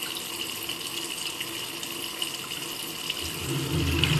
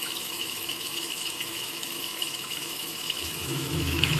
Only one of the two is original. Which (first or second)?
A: first